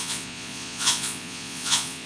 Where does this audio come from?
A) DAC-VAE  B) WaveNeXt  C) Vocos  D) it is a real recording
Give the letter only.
C